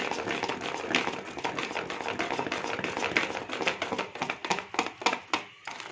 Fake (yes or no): no